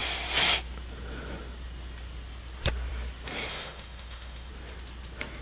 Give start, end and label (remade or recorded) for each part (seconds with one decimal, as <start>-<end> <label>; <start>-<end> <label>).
0.0-3.5 recorded; 3.5-4.5 remade; 4.5-5.4 recorded